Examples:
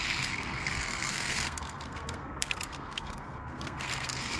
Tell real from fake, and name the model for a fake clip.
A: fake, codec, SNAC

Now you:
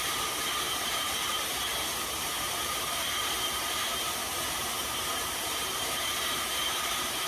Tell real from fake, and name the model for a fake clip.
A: fake, vocoder, BigVGAN v2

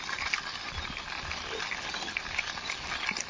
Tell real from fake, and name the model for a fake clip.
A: real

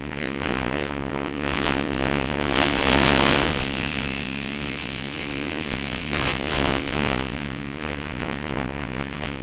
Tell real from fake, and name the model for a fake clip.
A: fake, vocoder, WaveNeXt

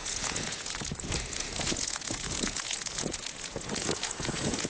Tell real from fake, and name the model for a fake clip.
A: fake, vocoder, Vocos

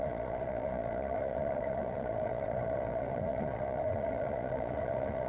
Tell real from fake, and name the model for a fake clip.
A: fake, vocoder, Vocos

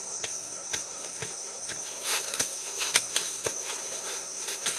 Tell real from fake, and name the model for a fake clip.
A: fake, codec, SNAC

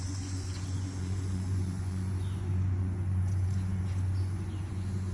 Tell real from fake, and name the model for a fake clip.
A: fake, vocoder, Vocos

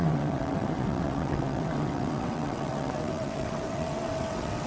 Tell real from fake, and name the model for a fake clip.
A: fake, vocoder, WaveNeXt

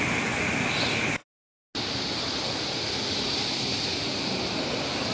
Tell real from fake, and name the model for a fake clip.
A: real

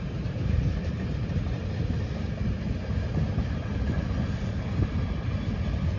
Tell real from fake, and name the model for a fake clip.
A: real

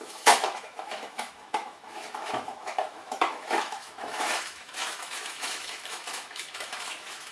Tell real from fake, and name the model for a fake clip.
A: fake, autoencoder, DAC-VAE